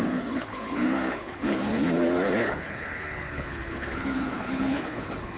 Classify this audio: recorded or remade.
remade